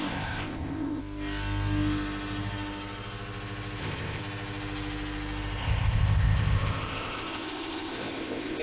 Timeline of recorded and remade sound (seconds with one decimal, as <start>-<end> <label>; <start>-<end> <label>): 0.0-1.0 remade; 1.0-3.8 recorded; 3.8-4.2 remade; 4.2-5.6 recorded; 5.6-8.6 remade